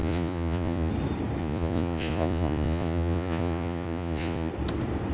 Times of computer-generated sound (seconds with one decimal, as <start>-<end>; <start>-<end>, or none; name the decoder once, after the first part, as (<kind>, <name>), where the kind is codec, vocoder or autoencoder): 0.0-0.9 (vocoder, Vocos); 1.4-4.5